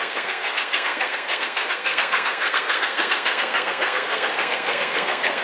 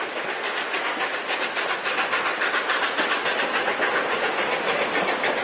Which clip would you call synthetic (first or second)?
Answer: first